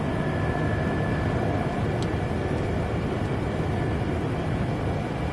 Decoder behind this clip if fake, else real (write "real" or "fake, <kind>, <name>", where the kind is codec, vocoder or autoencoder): real